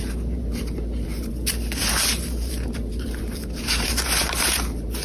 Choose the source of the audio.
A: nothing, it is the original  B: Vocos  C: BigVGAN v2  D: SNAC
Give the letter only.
C